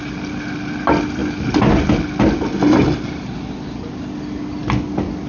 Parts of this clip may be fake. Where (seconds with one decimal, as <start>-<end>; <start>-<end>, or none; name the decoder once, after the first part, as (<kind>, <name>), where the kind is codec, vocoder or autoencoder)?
none